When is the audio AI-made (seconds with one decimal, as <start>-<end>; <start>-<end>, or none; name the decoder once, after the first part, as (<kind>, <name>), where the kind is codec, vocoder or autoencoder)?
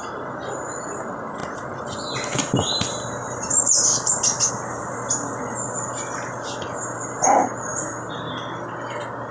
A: 7.4-8.1 (vocoder, BigVGAN v2)